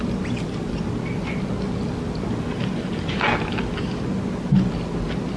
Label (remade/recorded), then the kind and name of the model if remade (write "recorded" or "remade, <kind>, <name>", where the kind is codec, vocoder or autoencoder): recorded